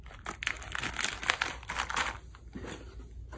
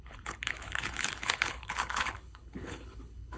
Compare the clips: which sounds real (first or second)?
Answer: first